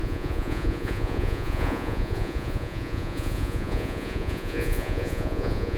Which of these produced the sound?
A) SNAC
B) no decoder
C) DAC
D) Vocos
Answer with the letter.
D